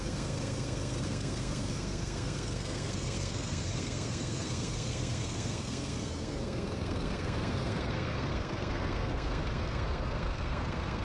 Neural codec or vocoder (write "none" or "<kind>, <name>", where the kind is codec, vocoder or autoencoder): codec, SNAC